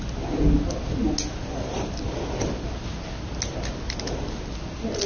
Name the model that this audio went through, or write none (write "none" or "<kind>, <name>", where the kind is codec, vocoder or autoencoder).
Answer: none